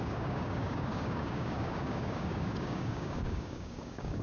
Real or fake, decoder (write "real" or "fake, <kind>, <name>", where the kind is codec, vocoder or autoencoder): fake, codec, DAC